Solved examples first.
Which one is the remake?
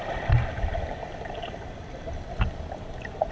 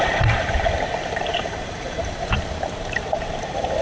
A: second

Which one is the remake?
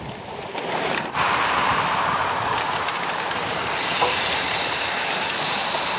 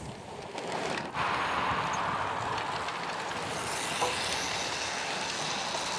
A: first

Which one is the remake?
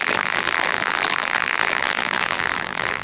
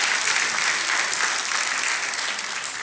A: first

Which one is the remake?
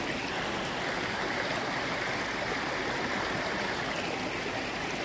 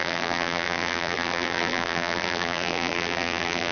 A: second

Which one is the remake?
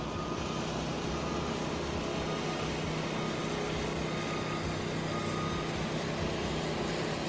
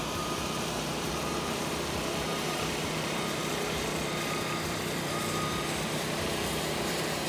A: second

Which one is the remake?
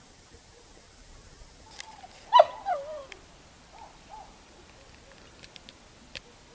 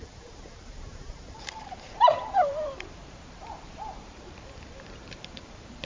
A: second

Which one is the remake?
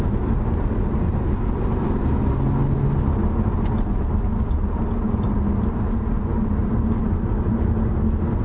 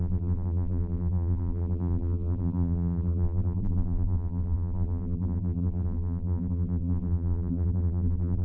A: second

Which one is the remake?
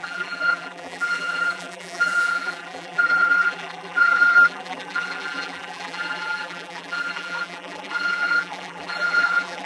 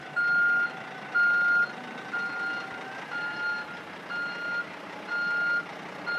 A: first